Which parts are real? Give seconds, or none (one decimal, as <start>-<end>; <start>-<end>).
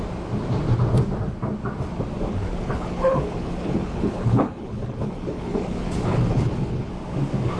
0.0-2.3; 6.9-7.6